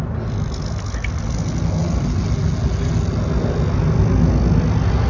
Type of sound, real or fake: real